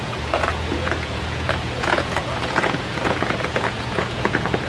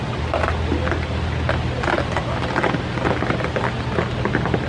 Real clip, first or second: second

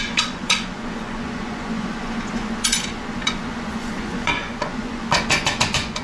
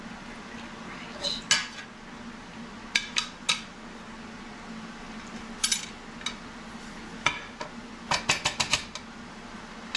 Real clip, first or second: second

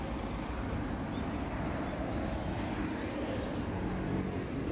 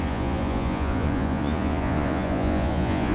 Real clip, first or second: first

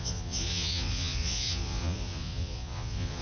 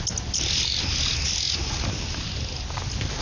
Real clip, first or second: second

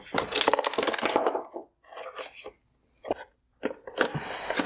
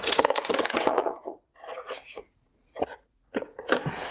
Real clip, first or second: first